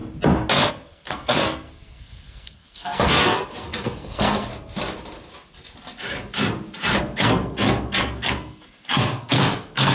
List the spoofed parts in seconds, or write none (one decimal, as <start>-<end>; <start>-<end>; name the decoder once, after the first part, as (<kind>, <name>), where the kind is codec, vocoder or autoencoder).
0.7-4.5 (codec, SNAC); 7.0-9.9